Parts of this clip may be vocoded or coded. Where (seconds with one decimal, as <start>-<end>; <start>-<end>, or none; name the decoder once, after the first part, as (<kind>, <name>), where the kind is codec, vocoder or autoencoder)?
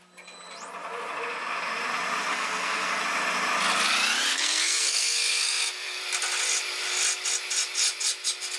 2.3-3.0 (codec, SNAC); 4.3-6.0